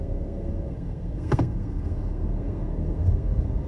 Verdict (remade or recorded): remade